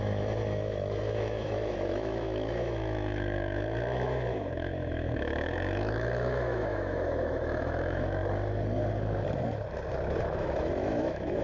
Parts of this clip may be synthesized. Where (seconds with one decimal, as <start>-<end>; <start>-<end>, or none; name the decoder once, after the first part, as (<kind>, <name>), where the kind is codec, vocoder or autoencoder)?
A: 0.0-8.2 (autoencoder, DAC-VAE); 10.2-11.4